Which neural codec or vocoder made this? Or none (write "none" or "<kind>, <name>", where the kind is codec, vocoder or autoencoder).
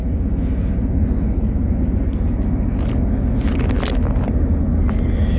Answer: none